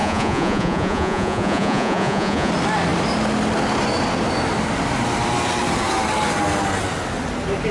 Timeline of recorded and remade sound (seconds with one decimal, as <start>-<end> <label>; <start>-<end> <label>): 0.0-2.5 remade; 2.5-7.7 recorded